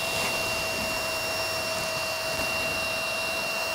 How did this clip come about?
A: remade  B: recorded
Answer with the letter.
B